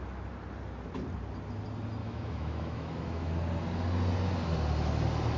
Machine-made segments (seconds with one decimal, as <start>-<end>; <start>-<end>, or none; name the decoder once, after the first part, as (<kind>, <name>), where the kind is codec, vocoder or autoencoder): 2.0-3.3 (autoencoder, DAC-VAE)